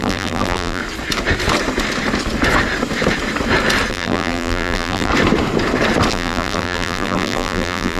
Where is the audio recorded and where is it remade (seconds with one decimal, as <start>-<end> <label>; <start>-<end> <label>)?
0.0-0.8 remade; 0.8-3.9 recorded; 3.9-5.1 remade; 5.1-6.1 recorded; 6.1-8.0 remade